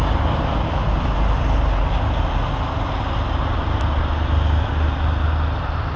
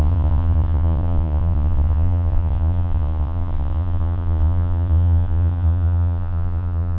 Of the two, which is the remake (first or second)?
second